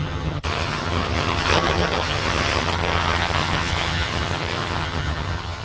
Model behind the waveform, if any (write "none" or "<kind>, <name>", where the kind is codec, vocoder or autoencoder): vocoder, HiFi-GAN